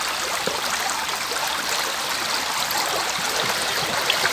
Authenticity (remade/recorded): recorded